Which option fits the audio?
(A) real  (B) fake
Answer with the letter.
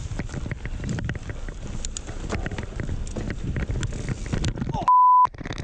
A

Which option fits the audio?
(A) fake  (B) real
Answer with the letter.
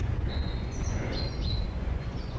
A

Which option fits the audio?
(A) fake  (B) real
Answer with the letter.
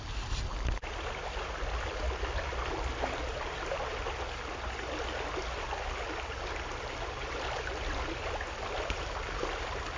B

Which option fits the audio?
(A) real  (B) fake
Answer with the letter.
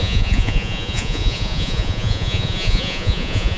B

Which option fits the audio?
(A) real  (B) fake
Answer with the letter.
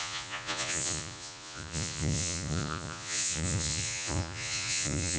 B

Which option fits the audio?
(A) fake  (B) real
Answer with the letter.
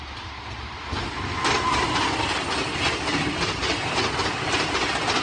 B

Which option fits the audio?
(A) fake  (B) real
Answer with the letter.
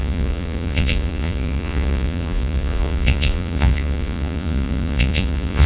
A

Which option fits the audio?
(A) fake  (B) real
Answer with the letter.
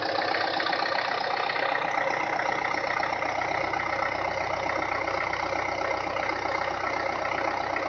B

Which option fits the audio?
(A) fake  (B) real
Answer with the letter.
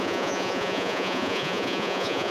A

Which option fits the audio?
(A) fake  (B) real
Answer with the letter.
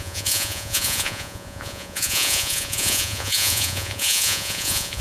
A